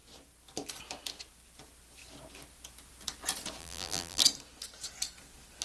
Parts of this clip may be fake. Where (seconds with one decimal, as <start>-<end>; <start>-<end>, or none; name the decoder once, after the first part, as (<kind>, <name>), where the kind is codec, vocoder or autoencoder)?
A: 3.6-4.2 (vocoder, BigVGAN v2)